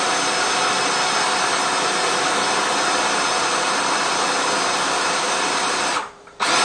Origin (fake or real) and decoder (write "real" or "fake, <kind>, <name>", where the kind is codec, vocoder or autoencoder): real